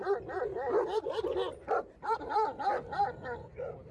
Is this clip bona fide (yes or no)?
yes